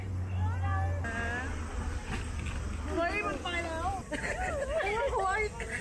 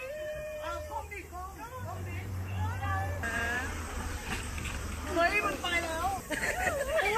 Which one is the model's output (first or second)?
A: second